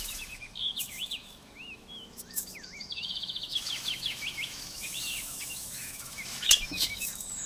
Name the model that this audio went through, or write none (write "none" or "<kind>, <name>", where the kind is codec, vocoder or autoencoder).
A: autoencoder, DAC-VAE